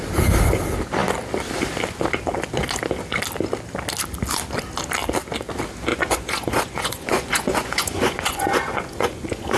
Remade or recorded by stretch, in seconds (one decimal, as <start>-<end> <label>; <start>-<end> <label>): 0.0-5.9 recorded; 5.9-9.6 remade